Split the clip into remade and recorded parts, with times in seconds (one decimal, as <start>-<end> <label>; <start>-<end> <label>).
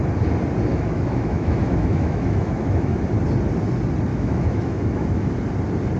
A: 0.0-0.7 recorded; 0.7-3.0 remade; 3.0-4.1 recorded; 4.1-5.3 remade; 5.3-6.0 recorded